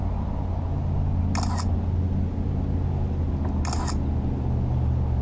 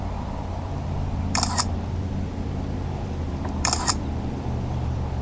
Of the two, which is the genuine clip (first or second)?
first